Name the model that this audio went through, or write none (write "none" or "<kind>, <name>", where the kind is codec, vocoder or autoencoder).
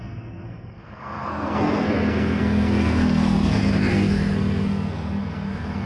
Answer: codec, SNAC